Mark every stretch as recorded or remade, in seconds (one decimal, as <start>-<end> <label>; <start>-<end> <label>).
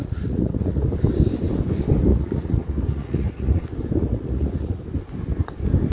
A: 0.0-0.9 remade; 0.9-2.1 recorded; 2.1-3.6 remade; 3.6-4.0 recorded; 4.0-4.8 remade; 4.8-5.9 recorded